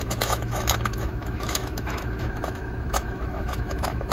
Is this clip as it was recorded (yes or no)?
no